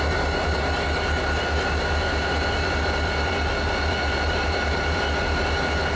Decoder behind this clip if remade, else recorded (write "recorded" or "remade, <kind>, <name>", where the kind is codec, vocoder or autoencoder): recorded